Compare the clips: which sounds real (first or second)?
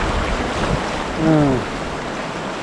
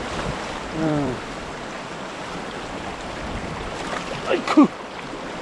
first